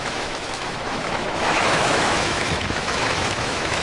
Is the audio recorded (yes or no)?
no